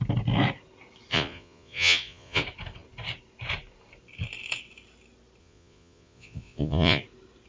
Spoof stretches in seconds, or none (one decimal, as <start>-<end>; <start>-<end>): 1.1-2.4; 5.4-7.0